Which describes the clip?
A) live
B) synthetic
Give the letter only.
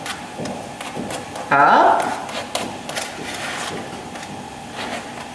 A